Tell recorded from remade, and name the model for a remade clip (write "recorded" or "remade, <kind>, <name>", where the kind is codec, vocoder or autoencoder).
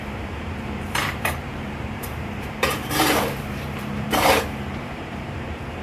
remade, vocoder, BigVGAN v2